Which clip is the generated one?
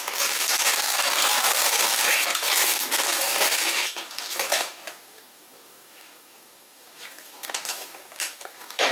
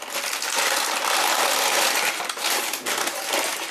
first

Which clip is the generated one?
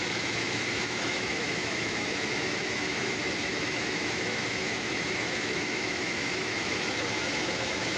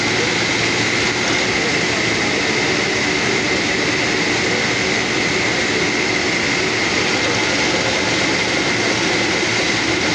first